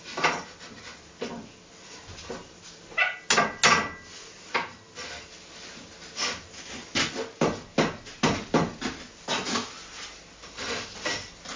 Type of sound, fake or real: real